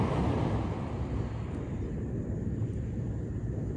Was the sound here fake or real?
real